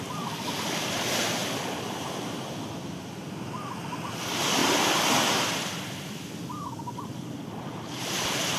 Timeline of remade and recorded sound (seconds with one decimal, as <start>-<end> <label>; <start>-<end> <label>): 0.0-8.6 recorded